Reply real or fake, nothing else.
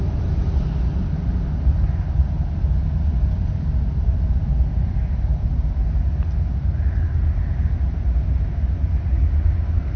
real